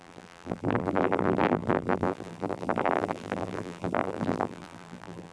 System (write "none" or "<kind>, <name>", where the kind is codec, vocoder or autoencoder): vocoder, BigVGAN v2